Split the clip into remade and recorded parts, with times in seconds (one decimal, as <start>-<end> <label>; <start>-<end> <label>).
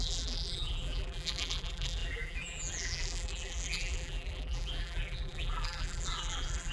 0.0-6.7 remade